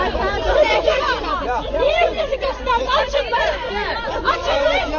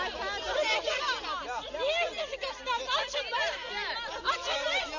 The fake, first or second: first